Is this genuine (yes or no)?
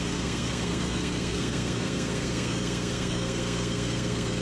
no